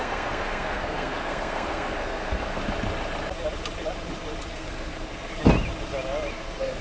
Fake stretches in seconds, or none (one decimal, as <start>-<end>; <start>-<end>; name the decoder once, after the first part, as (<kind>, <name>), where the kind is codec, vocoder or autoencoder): 0.0-2.6 (codec, SNAC); 4.5-5.3; 6.3-6.8